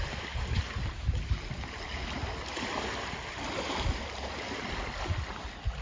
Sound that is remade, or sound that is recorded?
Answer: recorded